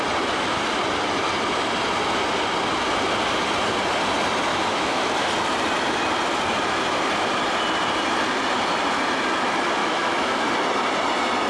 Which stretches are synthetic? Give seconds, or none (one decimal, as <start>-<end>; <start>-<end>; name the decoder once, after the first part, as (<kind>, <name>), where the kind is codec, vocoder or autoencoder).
4.5-5.1 (autoencoder, DAC-VAE); 9.8-10.4